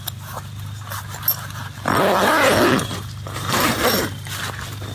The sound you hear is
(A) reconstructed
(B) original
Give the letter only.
B